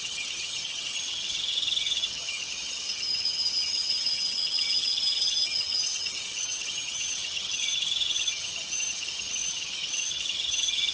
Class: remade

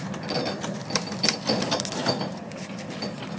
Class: recorded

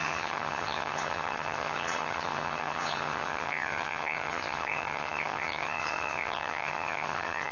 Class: remade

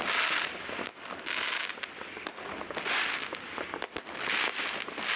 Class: recorded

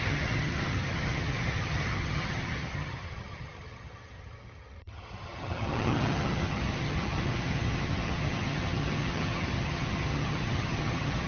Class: remade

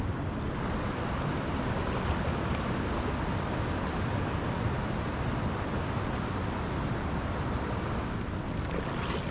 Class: recorded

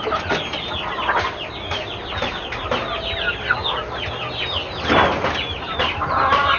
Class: recorded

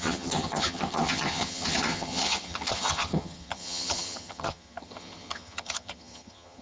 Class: remade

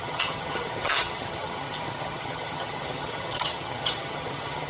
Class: remade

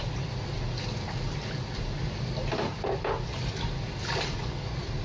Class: recorded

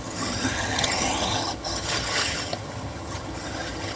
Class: remade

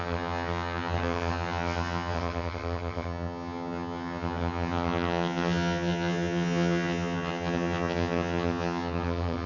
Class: remade